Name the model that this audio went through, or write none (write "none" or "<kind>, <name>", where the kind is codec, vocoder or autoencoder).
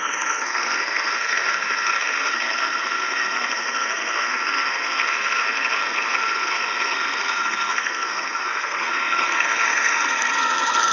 codec, SNAC